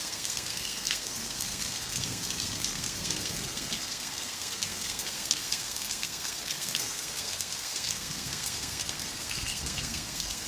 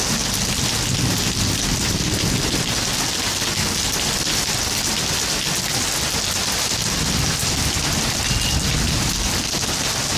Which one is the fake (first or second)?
first